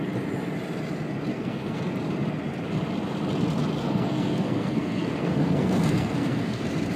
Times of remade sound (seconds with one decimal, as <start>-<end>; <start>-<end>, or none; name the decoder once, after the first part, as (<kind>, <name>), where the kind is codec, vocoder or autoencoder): 1.3-1.9 (codec, SNAC); 3.8-6.6